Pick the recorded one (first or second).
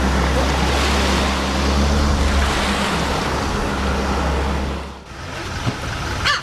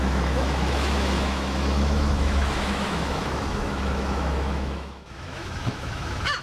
first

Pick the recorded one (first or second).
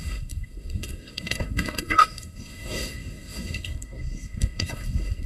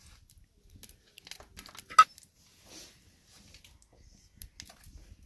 second